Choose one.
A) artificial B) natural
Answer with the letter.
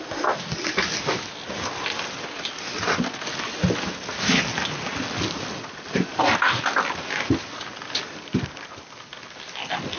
B